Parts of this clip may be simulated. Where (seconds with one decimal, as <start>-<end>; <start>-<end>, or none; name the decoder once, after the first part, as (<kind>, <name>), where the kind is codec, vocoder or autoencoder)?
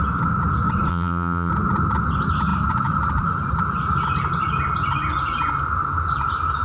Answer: 0.9-1.5 (vocoder, BigVGAN v2)